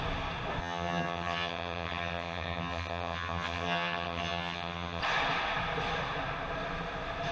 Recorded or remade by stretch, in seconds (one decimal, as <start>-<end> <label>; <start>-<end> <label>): 0.0-0.6 recorded; 0.6-5.0 remade; 5.0-7.3 recorded